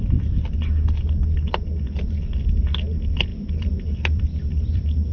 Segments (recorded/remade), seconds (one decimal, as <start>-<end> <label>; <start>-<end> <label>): 0.0-3.3 recorded; 3.3-5.1 remade